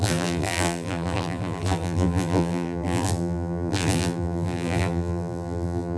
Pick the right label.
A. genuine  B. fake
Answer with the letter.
B